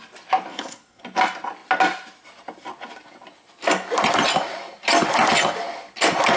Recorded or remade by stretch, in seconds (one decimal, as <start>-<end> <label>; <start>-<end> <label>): 0.0-0.5 recorded; 0.5-1.0 remade; 1.0-6.4 recorded